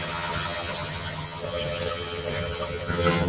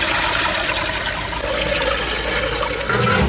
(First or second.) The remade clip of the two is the first